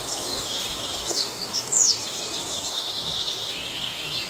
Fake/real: fake